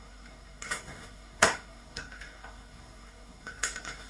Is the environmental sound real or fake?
fake